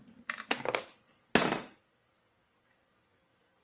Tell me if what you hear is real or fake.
real